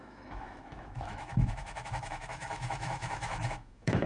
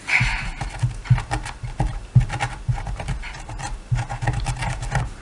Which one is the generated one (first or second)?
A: first